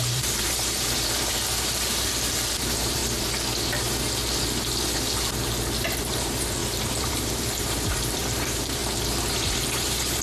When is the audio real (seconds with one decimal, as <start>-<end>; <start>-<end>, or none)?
3.0-6.0; 8.8-9.3